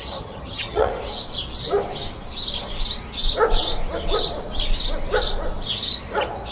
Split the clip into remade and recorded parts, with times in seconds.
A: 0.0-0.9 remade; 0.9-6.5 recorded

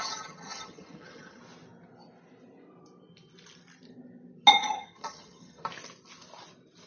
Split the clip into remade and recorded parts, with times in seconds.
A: 0.0-1.4 remade; 1.4-4.5 recorded; 4.5-5.6 remade; 5.6-6.9 recorded

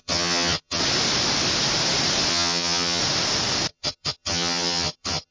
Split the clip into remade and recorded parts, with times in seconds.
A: 0.0-0.8 remade; 0.8-2.3 recorded; 2.3-3.0 remade; 3.0-3.7 recorded; 3.7-5.3 remade

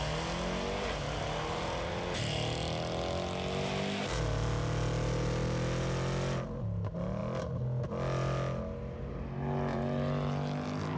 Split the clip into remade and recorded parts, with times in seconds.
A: 0.0-11.0 recorded